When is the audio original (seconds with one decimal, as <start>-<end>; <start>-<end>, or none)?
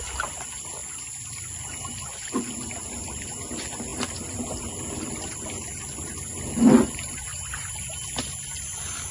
0.8-1.4; 7.3-8.6